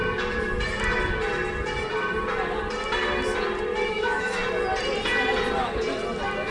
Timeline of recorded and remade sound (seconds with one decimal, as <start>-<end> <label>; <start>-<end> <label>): 0.0-3.9 recorded; 3.9-4.4 remade; 4.4-6.5 recorded